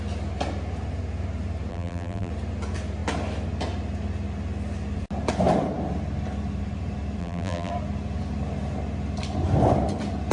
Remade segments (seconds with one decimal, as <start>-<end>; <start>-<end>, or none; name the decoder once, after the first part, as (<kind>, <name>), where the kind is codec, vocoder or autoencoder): 1.7-2.3 (vocoder, BigVGAN v2); 7.2-7.7